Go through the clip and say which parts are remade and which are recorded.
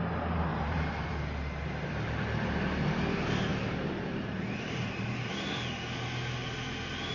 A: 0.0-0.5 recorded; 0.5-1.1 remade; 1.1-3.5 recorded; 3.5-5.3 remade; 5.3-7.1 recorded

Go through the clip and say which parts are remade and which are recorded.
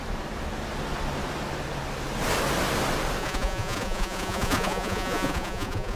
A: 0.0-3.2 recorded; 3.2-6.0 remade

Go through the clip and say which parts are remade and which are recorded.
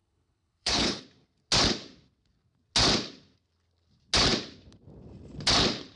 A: 0.0-1.0 remade; 1.0-6.0 recorded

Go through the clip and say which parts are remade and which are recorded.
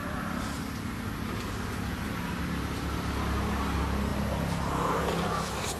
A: 0.0-5.8 recorded